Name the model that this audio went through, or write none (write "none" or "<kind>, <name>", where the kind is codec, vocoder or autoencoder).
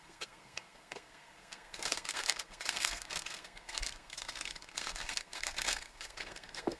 codec, SNAC